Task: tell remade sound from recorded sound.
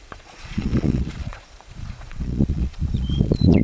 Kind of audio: remade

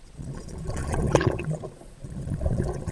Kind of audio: remade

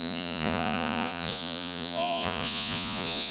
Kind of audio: remade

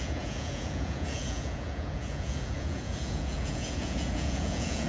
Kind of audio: remade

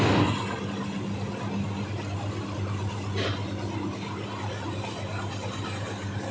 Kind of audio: recorded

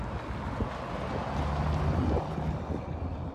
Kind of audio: recorded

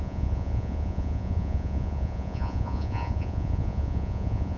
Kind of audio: remade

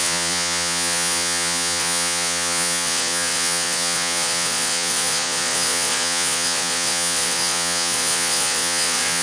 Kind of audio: remade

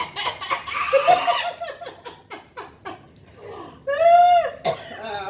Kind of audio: recorded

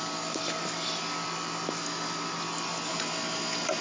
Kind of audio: recorded